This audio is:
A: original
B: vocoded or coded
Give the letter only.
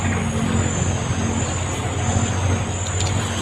A